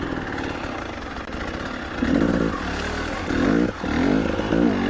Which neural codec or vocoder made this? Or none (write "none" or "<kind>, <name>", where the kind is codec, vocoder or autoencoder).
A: none